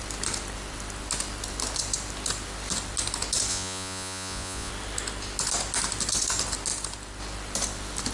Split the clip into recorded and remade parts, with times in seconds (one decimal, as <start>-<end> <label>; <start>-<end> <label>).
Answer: 0.0-3.5 recorded; 3.5-4.7 remade; 4.7-8.1 recorded